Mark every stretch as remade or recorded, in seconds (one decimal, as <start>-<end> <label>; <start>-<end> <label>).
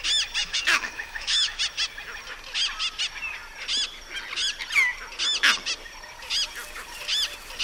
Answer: 0.0-0.4 recorded; 0.4-1.6 remade; 1.6-7.6 recorded